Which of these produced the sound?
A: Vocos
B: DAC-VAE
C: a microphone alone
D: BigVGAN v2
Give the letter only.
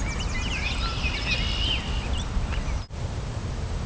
C